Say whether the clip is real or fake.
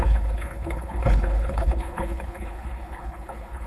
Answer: fake